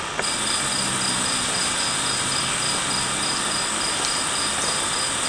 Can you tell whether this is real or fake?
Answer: real